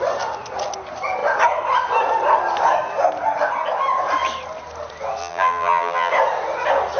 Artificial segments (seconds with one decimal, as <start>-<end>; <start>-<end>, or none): 5.2-6.1